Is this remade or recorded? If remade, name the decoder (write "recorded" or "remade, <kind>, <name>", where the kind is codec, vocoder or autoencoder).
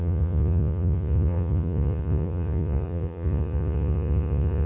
remade, vocoder, Vocos